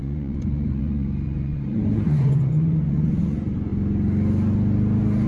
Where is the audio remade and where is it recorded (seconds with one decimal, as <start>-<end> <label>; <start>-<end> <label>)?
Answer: 0.0-3.7 remade; 3.7-5.3 recorded